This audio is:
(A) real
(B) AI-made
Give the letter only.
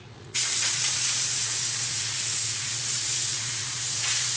B